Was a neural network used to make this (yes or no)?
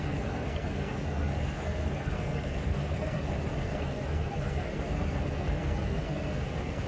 yes